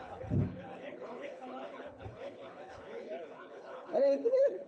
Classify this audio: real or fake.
fake